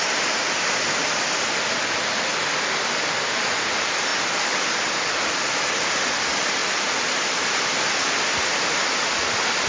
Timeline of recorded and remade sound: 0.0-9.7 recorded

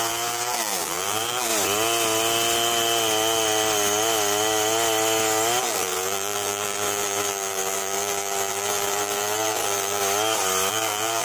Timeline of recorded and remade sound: 0.0-1.5 remade; 1.5-5.6 recorded; 5.6-10.0 remade; 10.0-10.7 recorded; 10.7-11.2 remade

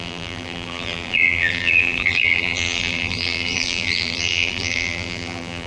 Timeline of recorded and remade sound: 0.0-5.7 remade